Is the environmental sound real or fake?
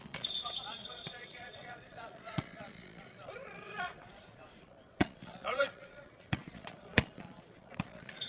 fake